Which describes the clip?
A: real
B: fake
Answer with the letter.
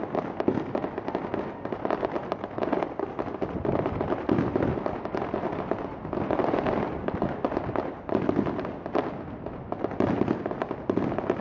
A